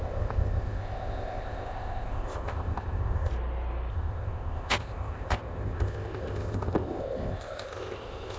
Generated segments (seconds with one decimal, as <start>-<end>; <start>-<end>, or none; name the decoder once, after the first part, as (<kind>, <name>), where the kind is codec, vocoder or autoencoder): 0.0-3.3 (codec, ZipCodec); 3.9-8.4